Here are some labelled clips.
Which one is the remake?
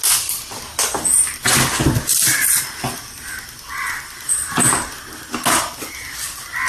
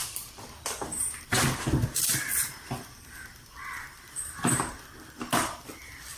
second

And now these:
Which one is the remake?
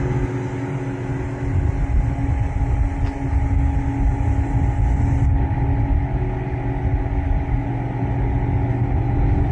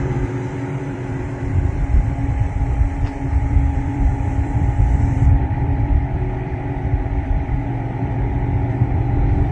second